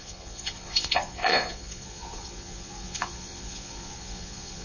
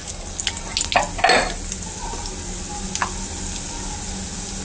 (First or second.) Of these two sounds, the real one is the second